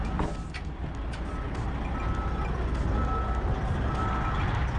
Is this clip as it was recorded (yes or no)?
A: yes